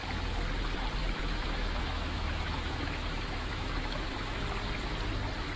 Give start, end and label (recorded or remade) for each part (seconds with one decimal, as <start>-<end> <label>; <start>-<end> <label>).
0.0-1.0 recorded; 1.0-4.4 remade; 4.4-5.6 recorded